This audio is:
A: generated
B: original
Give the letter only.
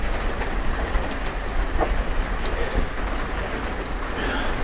B